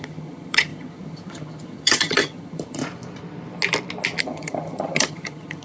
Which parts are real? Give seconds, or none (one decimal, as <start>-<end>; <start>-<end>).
2.8-4.2